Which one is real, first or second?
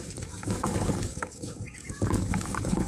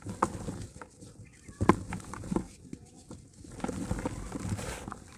second